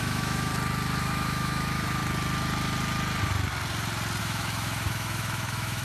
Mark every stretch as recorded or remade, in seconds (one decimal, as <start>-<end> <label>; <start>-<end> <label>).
0.0-0.5 remade; 0.5-1.0 recorded; 1.0-2.0 remade; 2.0-4.2 recorded; 4.2-5.8 remade